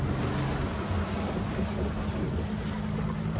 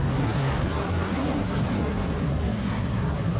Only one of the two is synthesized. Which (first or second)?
second